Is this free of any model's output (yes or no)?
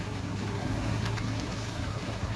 no